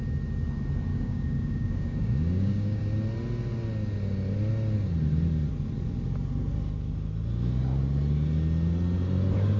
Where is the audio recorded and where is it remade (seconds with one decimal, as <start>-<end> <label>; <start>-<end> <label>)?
0.0-0.9 recorded; 0.9-2.8 remade; 2.8-9.6 recorded